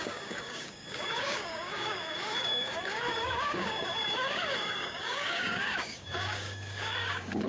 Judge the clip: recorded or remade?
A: remade